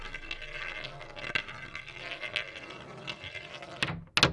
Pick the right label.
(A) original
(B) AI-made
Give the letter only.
A